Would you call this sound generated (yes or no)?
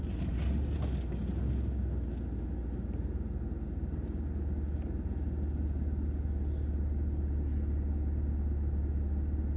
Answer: no